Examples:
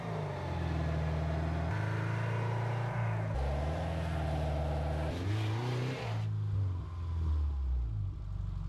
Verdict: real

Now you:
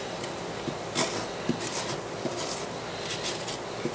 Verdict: real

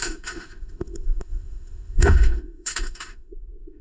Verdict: fake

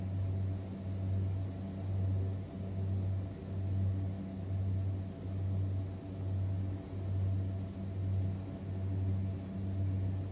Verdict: real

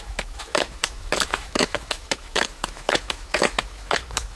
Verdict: fake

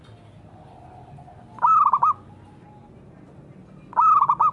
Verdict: real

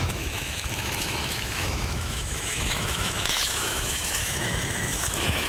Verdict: fake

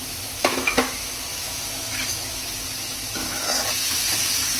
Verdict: fake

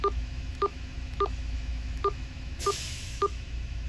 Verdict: fake